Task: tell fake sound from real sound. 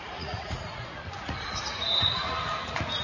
fake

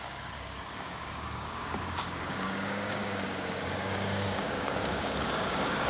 fake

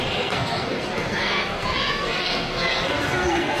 fake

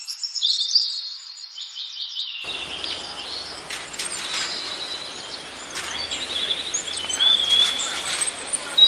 fake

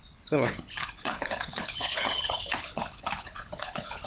fake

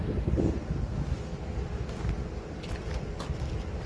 fake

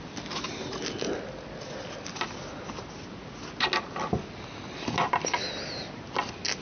real